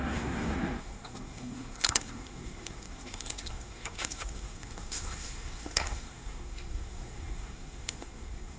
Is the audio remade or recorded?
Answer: remade